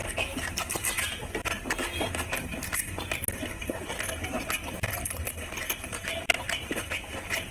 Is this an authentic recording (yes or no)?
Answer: yes